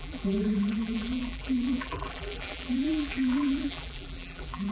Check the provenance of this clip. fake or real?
fake